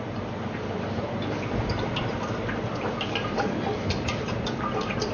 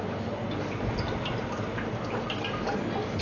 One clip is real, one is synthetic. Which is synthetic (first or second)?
first